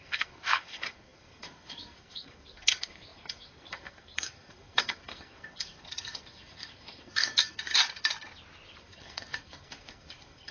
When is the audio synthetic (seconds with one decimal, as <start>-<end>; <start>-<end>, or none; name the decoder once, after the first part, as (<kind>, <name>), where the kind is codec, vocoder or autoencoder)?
0.0-7.7 (codec, SNAC); 8.8-10.5